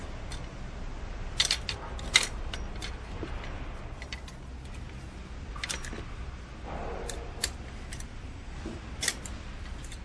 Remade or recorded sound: recorded